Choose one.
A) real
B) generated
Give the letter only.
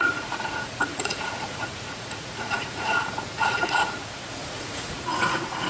B